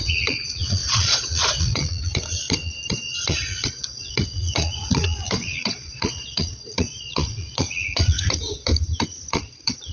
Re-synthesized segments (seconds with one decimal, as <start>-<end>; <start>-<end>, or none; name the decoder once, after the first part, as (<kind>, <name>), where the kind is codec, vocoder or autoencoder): 0.0-8.7 (vocoder, Vocos); 9.3-9.9